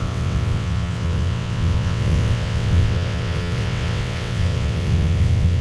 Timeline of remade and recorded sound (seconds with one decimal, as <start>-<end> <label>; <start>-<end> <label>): 0.0-5.6 remade